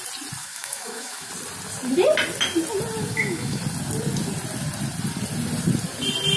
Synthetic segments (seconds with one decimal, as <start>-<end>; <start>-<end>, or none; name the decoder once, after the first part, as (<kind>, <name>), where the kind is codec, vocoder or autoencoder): 0.4-1.3 (autoencoder, DAC-VAE); 3.0-3.6